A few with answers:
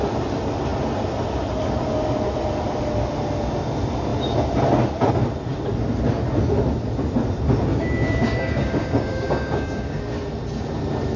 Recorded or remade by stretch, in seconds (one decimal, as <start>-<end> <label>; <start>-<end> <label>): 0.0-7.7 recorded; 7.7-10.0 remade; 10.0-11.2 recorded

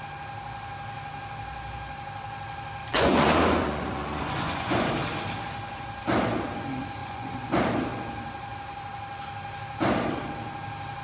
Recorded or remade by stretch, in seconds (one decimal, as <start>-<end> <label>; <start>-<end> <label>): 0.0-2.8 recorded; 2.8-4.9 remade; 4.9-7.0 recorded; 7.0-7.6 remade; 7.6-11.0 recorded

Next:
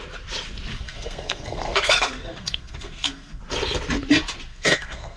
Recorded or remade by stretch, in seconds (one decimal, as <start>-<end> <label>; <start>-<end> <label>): 0.0-0.7 recorded; 0.7-3.4 remade; 3.4-4.5 recorded; 4.5-5.2 remade

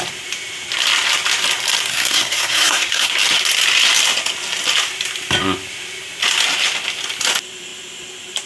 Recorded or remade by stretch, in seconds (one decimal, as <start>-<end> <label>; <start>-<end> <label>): 0.0-1.9 recorded; 1.9-3.1 remade; 3.1-8.5 recorded

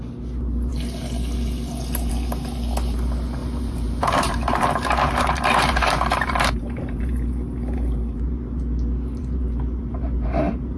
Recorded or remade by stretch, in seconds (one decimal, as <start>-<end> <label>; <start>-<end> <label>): 0.0-3.4 recorded; 3.4-8.6 remade; 8.6-9.2 recorded; 9.2-10.8 remade